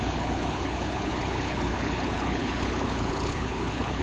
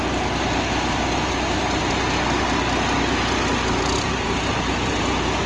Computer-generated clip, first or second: first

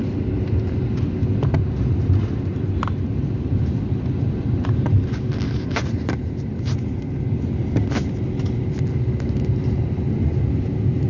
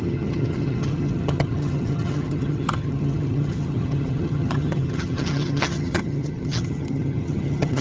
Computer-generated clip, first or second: second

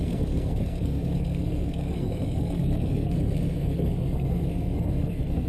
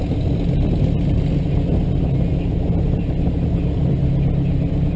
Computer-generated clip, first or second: first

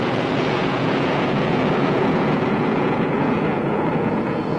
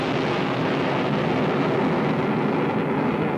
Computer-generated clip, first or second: first